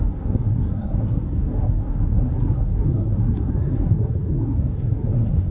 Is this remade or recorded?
remade